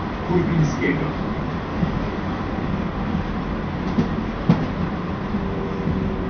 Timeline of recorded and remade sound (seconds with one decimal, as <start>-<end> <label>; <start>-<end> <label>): 0.0-1.7 recorded; 1.7-2.2 remade; 2.2-6.3 recorded